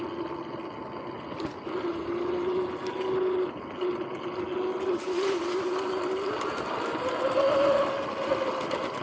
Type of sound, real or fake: real